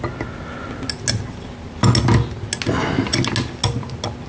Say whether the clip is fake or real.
real